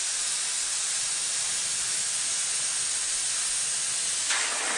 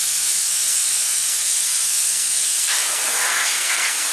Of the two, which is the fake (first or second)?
second